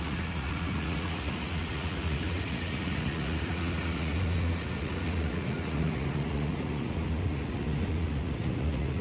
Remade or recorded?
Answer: remade